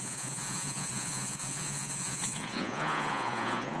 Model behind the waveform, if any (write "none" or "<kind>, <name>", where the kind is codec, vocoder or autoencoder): vocoder, Vocos